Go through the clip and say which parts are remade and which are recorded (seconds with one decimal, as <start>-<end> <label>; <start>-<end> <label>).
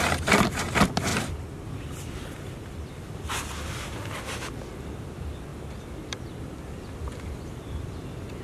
0.0-1.1 recorded; 1.1-3.1 remade; 3.1-5.5 recorded; 5.5-7.4 remade; 7.4-8.4 recorded